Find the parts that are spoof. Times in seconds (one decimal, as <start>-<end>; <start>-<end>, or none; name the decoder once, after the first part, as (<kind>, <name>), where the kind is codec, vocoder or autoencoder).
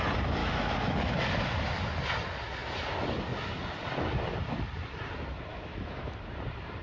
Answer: 0.4-1.2 (autoencoder, DAC-VAE); 5.5-6.2